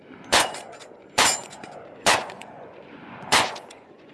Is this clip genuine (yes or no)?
no